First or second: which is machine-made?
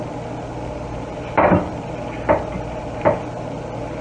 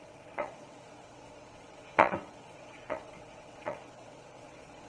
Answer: second